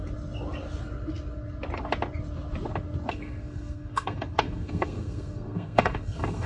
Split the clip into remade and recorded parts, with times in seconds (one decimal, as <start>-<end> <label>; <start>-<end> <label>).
0.0-3.1 recorded; 3.1-6.5 remade